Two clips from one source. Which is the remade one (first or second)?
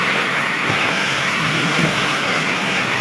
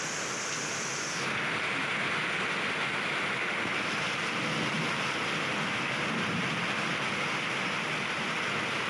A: first